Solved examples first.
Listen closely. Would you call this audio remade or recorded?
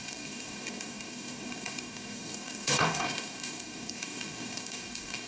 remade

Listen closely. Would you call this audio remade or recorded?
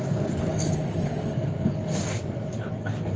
remade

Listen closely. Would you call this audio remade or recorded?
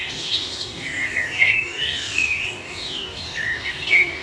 remade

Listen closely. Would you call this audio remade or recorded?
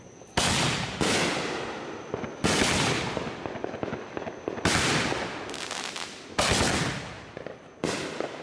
recorded